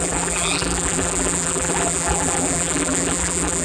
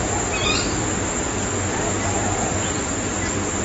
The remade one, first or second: first